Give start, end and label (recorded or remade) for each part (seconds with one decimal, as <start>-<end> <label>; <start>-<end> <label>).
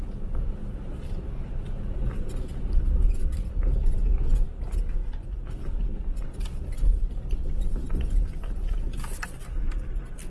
0.0-5.0 recorded; 5.0-5.5 remade; 5.5-10.3 recorded